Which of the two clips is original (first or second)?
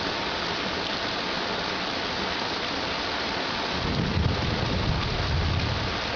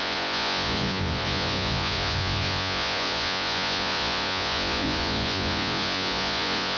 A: first